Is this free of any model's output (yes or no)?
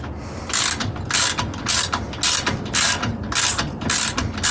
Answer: yes